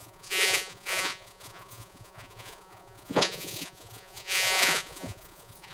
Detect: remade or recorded remade